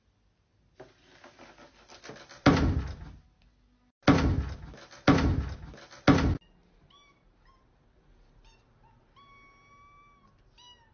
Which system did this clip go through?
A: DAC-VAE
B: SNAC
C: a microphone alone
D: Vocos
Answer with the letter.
C